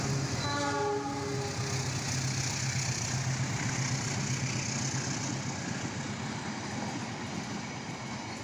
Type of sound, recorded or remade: recorded